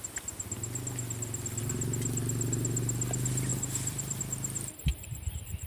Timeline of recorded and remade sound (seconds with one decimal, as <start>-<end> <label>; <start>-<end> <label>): 0.0-3.5 recorded; 3.5-4.2 remade; 4.2-4.9 recorded; 4.9-5.7 remade